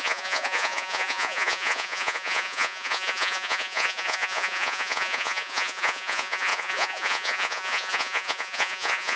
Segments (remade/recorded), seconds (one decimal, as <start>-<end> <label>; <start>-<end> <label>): 0.0-9.2 remade